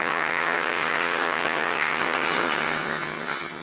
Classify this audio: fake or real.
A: fake